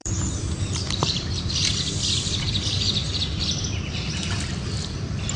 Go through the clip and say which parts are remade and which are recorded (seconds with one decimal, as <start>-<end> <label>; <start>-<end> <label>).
0.0-1.5 remade; 1.5-5.4 recorded